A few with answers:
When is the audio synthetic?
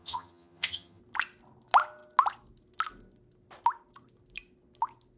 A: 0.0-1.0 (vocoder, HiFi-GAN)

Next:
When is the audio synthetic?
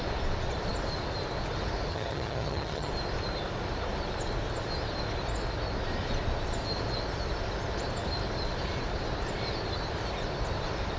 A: 1.9-2.9 (vocoder, HiFi-GAN)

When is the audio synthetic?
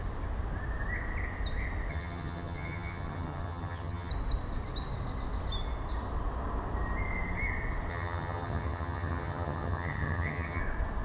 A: 1.9-4.1 (vocoder, HiFi-GAN); 7.9-10.6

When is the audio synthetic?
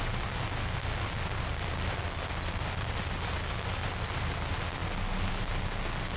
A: none